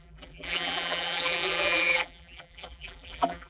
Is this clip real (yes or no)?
no